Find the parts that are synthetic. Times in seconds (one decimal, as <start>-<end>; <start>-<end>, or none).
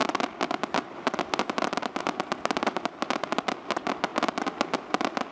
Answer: none